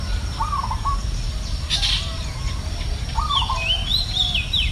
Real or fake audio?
real